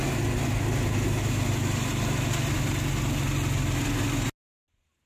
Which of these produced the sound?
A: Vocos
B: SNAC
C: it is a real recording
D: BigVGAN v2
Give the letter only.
C